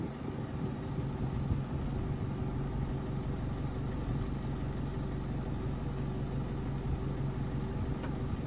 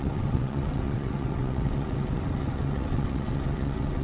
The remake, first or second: second